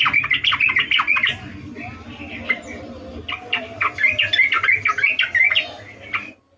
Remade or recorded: recorded